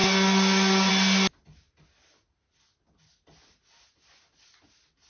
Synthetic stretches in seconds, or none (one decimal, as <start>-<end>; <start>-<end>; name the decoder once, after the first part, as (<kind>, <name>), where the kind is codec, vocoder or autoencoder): none